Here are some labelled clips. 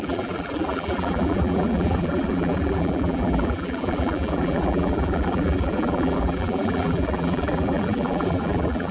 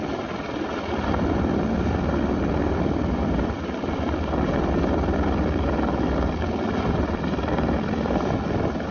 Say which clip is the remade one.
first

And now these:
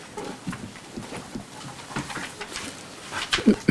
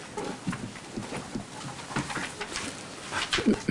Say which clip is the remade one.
first